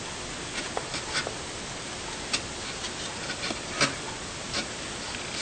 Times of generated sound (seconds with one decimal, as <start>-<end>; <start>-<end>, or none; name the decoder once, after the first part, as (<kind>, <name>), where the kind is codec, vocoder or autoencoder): none